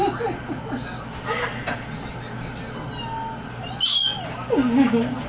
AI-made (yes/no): no